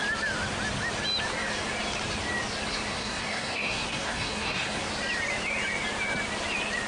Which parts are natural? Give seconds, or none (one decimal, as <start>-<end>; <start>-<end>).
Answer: 0.0-2.9; 4.8-6.9